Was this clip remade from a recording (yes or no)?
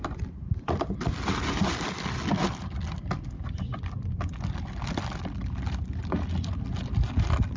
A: no